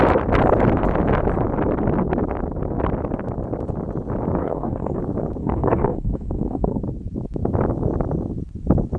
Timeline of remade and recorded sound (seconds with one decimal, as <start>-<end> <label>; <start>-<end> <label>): 0.0-4.4 recorded; 4.4-5.0 remade; 5.0-5.4 recorded; 5.4-6.8 remade; 6.8-9.0 recorded